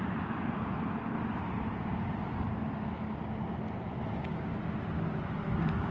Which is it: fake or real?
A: real